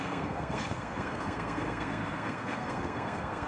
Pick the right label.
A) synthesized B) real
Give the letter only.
A